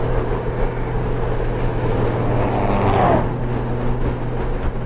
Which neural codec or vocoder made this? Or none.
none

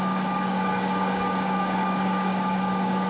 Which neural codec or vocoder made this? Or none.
codec, DAC